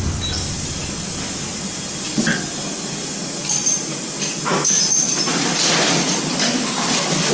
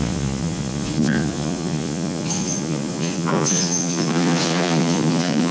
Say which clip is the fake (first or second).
second